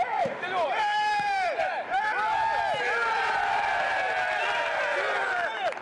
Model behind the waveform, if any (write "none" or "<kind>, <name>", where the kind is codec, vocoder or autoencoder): vocoder, BigVGAN v2